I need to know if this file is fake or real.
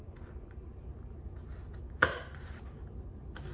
real